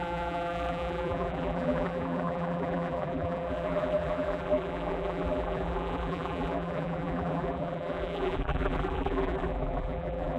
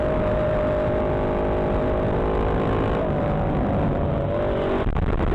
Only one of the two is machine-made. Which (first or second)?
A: first